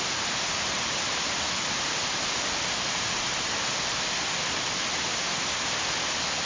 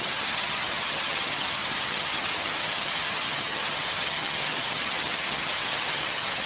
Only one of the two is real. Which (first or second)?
first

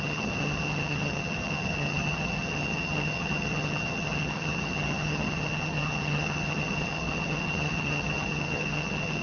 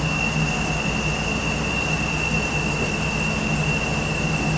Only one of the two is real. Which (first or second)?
second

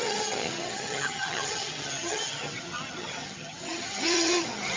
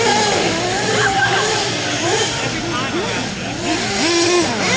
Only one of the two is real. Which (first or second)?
second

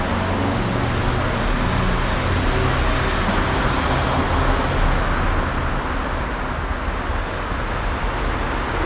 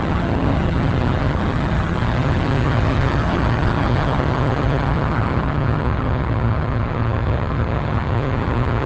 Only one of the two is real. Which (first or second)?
first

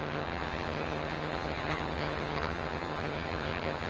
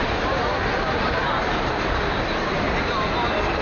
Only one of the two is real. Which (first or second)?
second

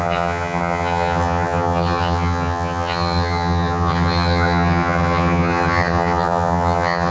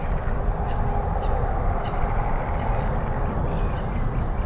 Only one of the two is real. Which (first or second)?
second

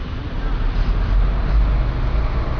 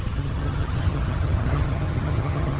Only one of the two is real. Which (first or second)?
first